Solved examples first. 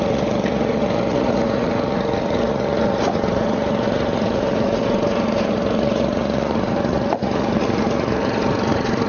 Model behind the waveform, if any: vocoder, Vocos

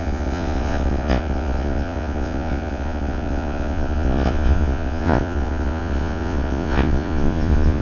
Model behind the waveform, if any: vocoder, Vocos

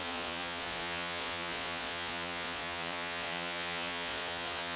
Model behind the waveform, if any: vocoder, Vocos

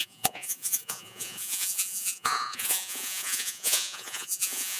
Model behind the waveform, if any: vocoder, Vocos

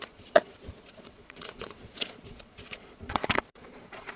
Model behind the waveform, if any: vocoder, Vocos